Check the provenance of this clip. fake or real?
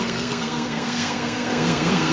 fake